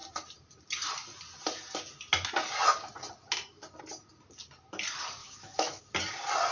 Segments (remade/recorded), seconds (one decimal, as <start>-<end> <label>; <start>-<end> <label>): 0.0-5.2 recorded; 5.2-5.8 remade; 5.8-6.5 recorded